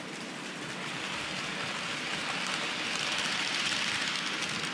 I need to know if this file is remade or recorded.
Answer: recorded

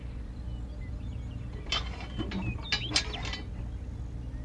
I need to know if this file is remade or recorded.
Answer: recorded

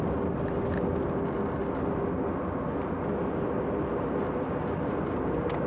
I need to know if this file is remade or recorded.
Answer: recorded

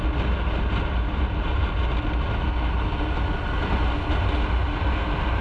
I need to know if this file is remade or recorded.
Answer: recorded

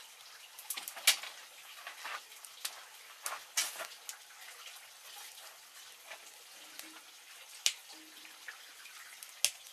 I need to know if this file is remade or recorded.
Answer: recorded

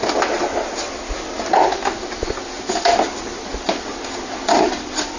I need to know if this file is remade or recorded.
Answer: recorded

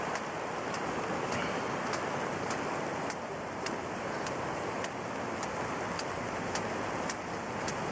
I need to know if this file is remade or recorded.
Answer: recorded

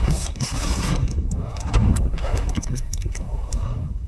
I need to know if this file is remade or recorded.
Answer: remade